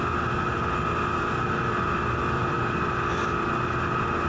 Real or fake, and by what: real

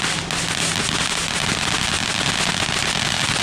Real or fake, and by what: real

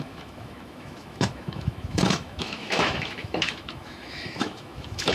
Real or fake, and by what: fake, autoencoder, DAC-VAE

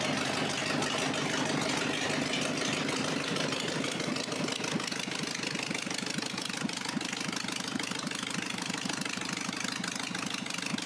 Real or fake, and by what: real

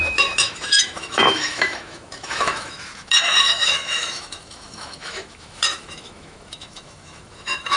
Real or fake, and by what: fake, autoencoder, DAC-VAE